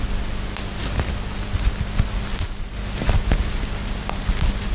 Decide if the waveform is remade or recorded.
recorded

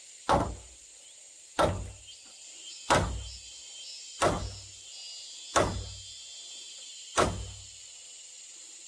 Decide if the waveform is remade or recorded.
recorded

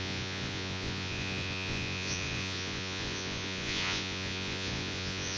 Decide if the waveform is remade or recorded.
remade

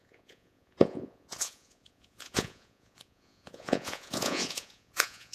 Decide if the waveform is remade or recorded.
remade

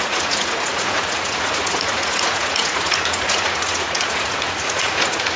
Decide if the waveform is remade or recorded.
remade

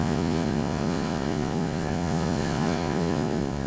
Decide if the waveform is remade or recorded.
remade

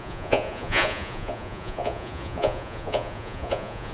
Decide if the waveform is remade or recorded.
remade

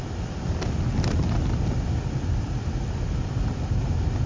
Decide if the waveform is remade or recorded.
recorded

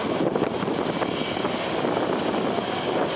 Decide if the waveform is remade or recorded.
recorded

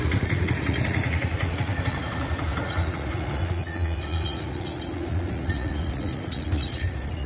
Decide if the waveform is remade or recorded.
remade